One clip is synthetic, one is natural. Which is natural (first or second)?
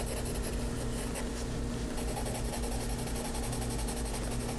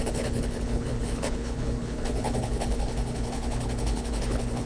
first